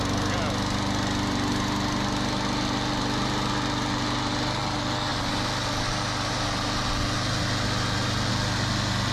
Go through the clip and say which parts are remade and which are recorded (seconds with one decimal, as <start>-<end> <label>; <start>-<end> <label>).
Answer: 0.0-9.1 recorded